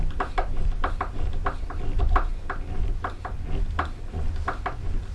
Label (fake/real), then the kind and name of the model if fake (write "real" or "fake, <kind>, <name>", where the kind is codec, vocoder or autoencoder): real